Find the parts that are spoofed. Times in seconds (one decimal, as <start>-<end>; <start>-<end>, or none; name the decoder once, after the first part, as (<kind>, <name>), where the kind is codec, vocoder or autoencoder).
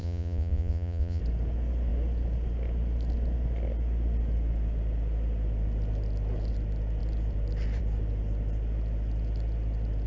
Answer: 0.0-1.2 (vocoder, Vocos)